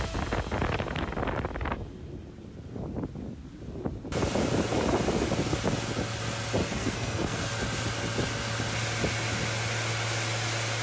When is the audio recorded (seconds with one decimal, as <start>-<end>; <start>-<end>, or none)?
0.0-6.6; 7.5-10.8